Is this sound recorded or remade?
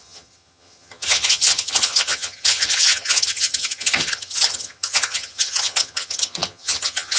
remade